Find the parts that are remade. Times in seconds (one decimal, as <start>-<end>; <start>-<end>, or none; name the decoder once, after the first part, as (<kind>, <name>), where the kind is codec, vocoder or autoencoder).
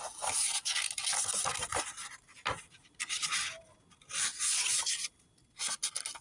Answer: 4.3-4.8 (vocoder, BigVGAN v2)